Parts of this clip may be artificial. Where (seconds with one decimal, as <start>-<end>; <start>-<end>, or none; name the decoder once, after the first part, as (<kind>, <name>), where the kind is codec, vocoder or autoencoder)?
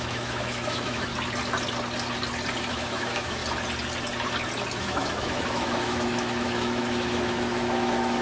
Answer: 0.0-1.1 (autoencoder, DAC-VAE); 2.7-3.4; 4.8-8.2